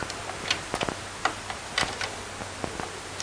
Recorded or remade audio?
recorded